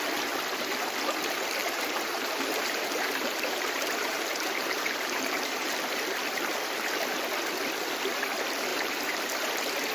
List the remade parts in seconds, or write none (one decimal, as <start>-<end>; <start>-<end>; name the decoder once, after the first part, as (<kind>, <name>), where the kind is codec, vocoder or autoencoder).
1.6-5.7 (vocoder, BigVGAN v2); 8.7-9.5